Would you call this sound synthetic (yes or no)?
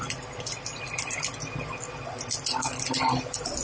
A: yes